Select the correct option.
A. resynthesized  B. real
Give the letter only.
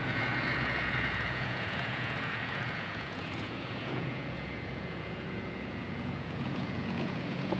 A